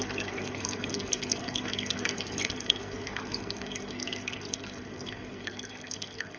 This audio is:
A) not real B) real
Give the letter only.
A